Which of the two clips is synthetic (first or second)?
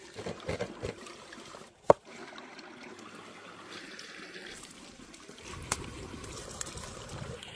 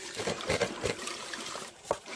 first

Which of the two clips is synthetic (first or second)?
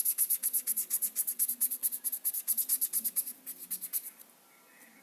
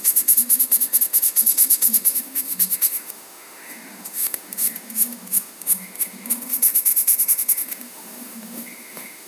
second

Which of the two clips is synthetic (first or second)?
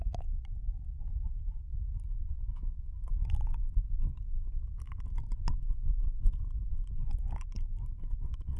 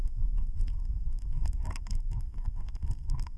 second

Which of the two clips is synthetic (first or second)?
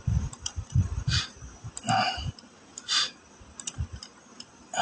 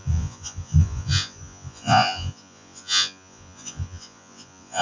second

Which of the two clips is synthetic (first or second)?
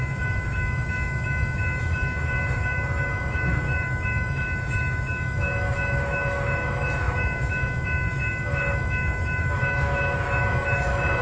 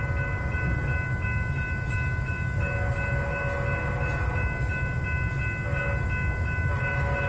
first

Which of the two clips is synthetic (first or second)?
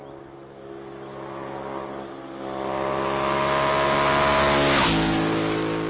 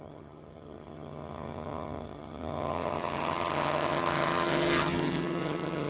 second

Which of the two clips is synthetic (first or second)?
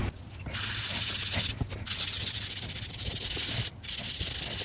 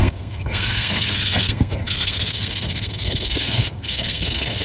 second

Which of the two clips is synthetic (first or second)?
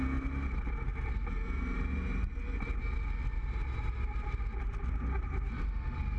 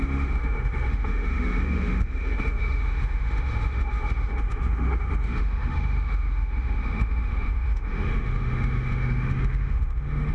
second